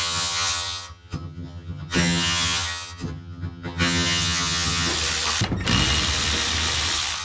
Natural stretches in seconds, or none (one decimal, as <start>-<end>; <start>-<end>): 4.9-7.2